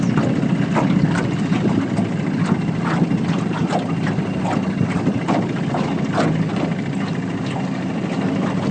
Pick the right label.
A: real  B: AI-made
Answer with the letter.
A